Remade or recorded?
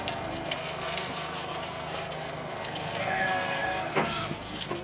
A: remade